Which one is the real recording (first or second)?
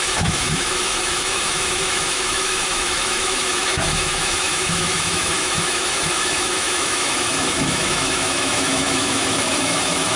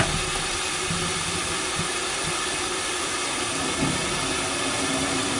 second